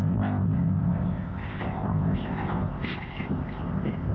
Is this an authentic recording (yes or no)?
no